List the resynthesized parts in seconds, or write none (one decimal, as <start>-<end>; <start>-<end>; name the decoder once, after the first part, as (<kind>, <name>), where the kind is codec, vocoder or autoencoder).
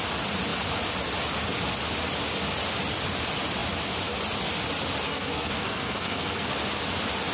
5.1-6.5 (codec, SNAC)